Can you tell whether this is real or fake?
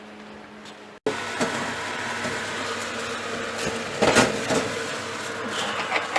real